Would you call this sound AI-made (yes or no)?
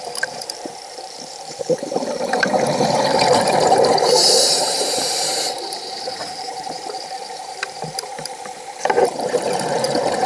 yes